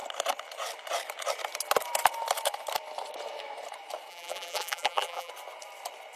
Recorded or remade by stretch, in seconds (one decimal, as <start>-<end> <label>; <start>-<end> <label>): 0.0-4.1 recorded; 4.1-5.3 remade; 5.3-6.2 recorded